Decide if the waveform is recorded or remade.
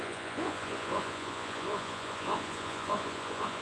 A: remade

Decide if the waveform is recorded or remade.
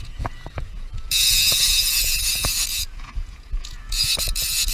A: remade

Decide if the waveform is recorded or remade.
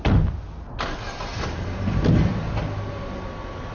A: recorded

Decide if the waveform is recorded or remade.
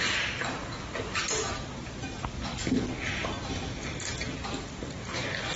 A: recorded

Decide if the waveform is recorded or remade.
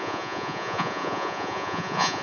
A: remade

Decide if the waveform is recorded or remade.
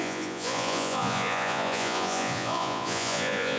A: remade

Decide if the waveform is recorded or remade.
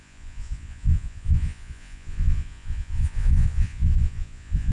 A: remade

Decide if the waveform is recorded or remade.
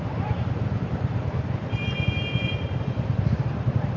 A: recorded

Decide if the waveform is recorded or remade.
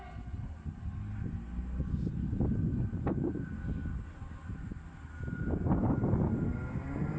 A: recorded